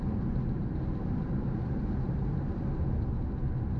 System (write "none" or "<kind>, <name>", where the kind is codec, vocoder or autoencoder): none